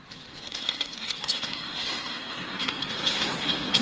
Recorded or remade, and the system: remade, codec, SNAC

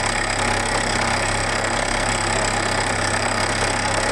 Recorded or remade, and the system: remade, codec, SNAC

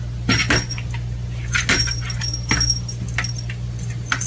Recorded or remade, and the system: recorded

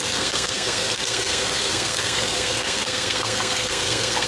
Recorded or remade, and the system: remade, codec, SNAC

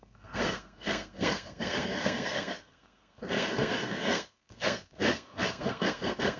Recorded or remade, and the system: remade, codec, SNAC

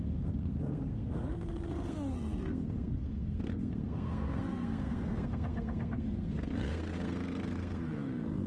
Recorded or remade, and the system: remade, codec, SNAC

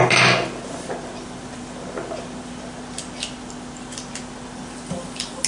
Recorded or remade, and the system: recorded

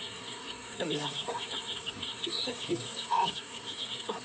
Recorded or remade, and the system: remade, codec, SNAC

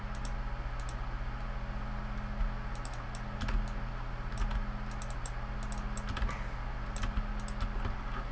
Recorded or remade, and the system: recorded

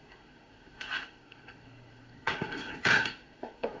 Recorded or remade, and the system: remade, codec, SNAC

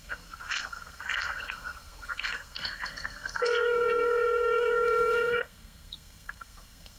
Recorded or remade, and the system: remade, codec, SNAC